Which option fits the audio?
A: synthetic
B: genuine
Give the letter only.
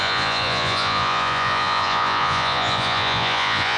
A